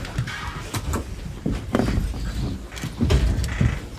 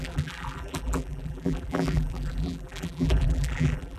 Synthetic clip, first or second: second